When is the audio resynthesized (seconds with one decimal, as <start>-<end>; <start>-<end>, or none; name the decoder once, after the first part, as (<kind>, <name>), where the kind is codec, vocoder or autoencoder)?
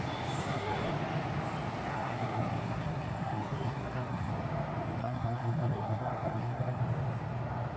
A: 0.4-0.9 (codec, SNAC); 1.9-4.3; 5.0-6.8